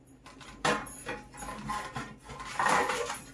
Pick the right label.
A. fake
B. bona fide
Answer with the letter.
B